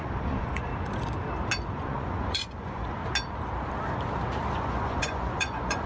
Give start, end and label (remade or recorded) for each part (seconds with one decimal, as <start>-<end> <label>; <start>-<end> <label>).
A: 0.0-0.7 remade; 0.7-1.7 recorded; 1.7-3.0 remade; 3.0-4.5 recorded; 4.5-5.9 remade